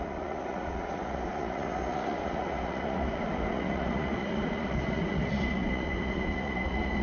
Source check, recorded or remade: remade